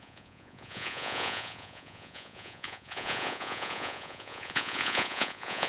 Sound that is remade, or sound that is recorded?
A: remade